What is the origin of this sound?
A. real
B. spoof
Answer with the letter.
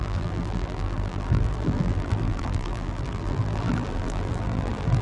B